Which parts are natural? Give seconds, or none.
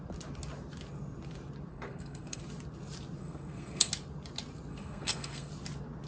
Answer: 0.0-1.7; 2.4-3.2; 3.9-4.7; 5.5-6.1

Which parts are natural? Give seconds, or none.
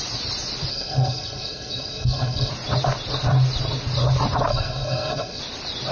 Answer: 0.0-0.7; 2.5-4.5; 5.4-5.9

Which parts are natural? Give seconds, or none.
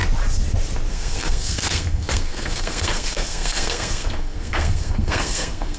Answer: 0.0-0.9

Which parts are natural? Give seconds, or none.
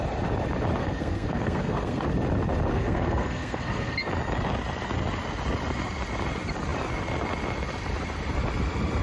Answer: 0.0-0.8; 2.1-2.7; 4.1-9.0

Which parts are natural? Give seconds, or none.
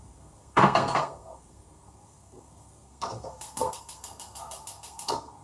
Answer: none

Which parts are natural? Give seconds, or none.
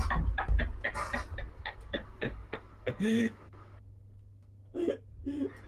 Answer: 0.0-1.5; 4.9-5.7